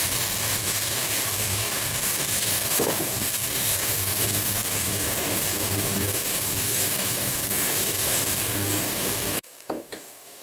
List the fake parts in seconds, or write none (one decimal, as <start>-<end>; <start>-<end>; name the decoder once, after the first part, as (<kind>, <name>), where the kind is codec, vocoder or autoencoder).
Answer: 0.0-10.4 (codec, DAC)

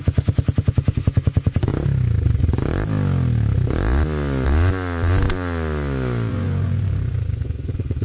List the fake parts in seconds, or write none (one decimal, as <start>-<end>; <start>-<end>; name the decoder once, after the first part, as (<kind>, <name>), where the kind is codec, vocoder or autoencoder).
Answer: 0.0-1.7 (vocoder, Vocos); 6.3-8.0

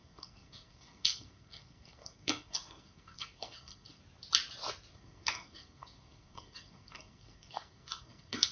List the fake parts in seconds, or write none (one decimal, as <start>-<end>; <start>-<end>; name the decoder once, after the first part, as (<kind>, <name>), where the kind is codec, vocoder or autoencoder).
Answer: 0.0-4.0 (codec, SNAC); 4.9-8.5

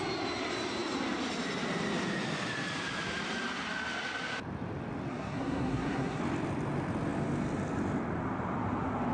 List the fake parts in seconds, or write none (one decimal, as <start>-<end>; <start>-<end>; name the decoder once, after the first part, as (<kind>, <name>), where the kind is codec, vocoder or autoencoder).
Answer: 5.1-6.2 (codec, SNAC)

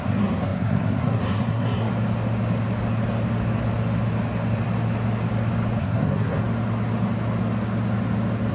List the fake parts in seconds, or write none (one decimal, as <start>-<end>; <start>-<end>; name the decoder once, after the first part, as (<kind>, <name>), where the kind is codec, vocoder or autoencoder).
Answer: 0.0-1.9 (codec, SNAC); 5.8-6.4

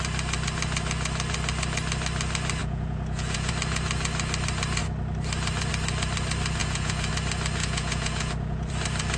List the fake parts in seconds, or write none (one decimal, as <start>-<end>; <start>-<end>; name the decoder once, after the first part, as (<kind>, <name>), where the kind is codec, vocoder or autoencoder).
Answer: 2.6-3.5 (vocoder, Vocos); 6.6-7.1; 7.6-8.7